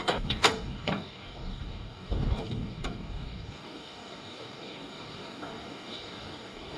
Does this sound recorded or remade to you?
remade